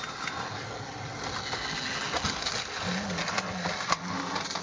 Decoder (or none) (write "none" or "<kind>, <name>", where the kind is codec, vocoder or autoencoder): none